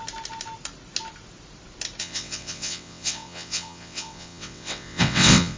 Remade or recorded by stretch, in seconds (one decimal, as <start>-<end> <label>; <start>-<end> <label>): 0.0-2.0 recorded; 2.0-5.6 remade